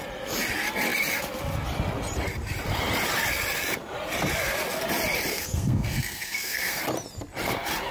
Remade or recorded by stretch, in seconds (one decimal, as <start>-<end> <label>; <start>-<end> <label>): 0.0-5.3 recorded; 5.3-6.8 remade; 6.8-7.9 recorded